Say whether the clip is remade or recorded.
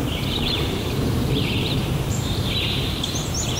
remade